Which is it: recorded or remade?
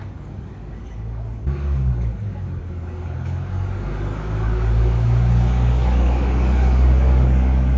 remade